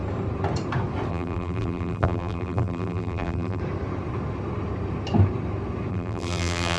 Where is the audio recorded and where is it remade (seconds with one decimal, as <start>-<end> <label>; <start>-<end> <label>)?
0.0-1.1 recorded; 1.1-3.6 remade; 3.6-5.9 recorded; 5.9-6.8 remade

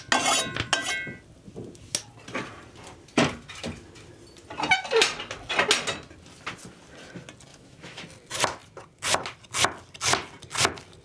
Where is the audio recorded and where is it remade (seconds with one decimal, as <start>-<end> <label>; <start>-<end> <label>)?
0.0-7.5 recorded; 7.5-8.0 remade; 8.0-11.0 recorded

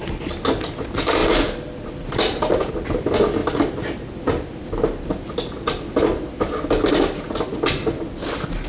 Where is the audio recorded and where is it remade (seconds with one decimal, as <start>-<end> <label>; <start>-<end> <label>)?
0.0-8.7 recorded

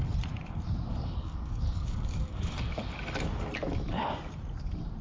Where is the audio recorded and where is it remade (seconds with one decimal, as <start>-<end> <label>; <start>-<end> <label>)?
0.0-0.9 recorded; 0.9-2.9 remade; 2.9-5.0 recorded

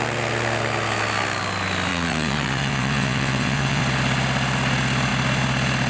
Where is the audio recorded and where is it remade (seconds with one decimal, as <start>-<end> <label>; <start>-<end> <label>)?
0.0-1.9 recorded; 1.9-3.8 remade; 3.8-5.9 recorded

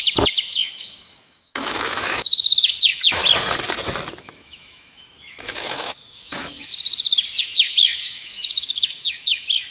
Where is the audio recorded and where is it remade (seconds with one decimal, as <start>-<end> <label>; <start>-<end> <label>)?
0.0-3.2 remade; 3.2-4.2 recorded; 4.2-6.7 remade; 6.7-7.4 recorded; 7.4-9.7 remade

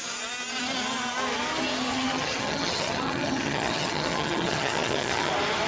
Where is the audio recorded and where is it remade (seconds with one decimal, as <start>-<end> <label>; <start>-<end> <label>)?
0.0-1.9 recorded; 1.9-5.3 remade; 5.3-5.7 recorded